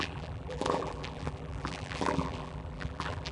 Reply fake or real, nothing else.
fake